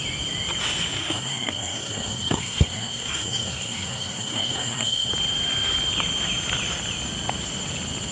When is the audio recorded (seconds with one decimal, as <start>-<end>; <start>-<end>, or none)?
0.0-1.0; 5.1-8.1

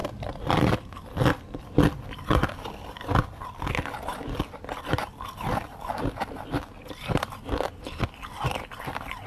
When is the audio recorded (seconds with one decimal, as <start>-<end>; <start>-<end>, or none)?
0.0-9.3

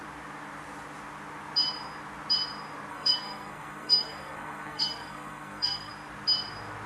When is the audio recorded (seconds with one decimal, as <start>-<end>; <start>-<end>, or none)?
0.0-2.9; 5.9-6.9

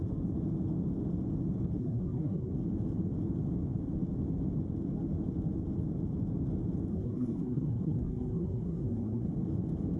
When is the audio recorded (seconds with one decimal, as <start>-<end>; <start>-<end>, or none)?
0.0-1.8; 2.5-6.9; 9.3-10.0

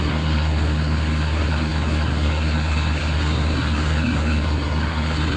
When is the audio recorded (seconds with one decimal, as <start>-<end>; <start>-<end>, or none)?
none

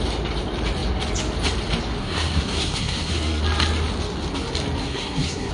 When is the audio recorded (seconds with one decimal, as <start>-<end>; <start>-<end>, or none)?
0.0-2.0; 3.4-4.8

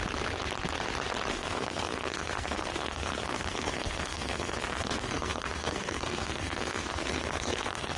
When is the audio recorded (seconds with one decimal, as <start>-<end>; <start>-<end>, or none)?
0.0-1.3

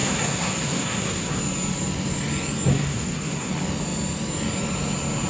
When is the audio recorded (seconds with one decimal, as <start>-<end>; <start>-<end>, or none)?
1.4-2.7; 3.5-5.3